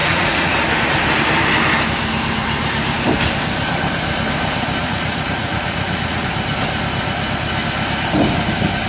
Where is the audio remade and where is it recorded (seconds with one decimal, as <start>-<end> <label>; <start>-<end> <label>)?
0.0-0.5 remade; 0.5-4.8 recorded; 4.8-6.3 remade; 6.3-8.9 recorded